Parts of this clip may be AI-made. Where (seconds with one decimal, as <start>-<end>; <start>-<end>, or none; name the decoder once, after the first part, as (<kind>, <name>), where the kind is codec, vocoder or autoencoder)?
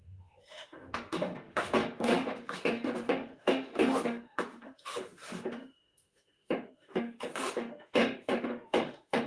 0.0-9.3 (autoencoder, DAC-VAE)